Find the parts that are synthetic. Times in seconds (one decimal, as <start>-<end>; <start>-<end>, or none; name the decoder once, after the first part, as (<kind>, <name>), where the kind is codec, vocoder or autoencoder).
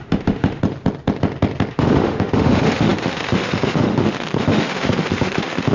0.0-0.6 (autoencoder, DAC-VAE); 1.7-5.7